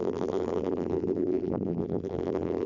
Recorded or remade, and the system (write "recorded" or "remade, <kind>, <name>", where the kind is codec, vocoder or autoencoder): remade, vocoder, BigVGAN v2